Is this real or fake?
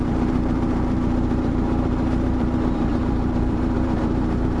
fake